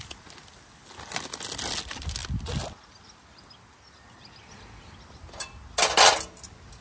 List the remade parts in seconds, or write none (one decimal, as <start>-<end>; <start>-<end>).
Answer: none